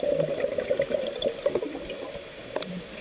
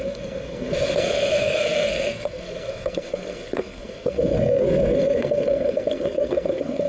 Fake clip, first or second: second